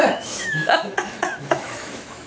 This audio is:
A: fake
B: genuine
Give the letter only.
A